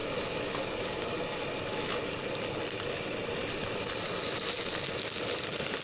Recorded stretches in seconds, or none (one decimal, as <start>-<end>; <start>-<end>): 1.2-5.8